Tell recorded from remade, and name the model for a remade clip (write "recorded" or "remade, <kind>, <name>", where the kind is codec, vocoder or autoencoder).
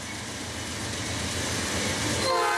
recorded